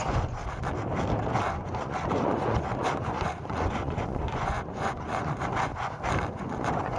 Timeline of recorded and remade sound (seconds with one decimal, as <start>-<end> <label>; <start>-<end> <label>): 0.0-0.4 remade; 0.4-1.3 recorded; 1.3-5.7 remade; 5.7-6.3 recorded; 6.3-7.0 remade